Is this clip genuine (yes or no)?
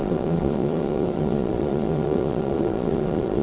no